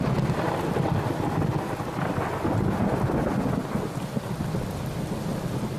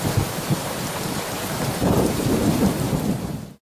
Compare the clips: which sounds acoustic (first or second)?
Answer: first